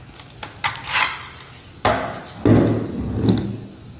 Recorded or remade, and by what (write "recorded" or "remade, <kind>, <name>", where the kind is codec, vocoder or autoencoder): recorded